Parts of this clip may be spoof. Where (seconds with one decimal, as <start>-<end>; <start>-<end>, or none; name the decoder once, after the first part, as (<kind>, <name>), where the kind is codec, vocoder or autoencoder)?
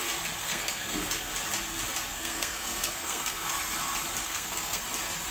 0.4-1.3 (codec, SNAC); 2.1-3.5; 4.2-4.8